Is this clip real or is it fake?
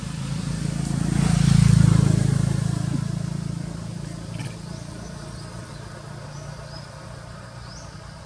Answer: real